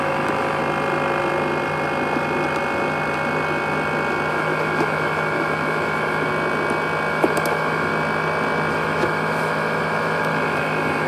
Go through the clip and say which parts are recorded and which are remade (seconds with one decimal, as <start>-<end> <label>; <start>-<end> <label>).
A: 0.0-0.6 remade; 0.6-4.3 recorded; 4.3-6.3 remade; 6.3-7.1 recorded; 7.1-7.9 remade; 7.9-8.7 recorded; 8.7-11.1 remade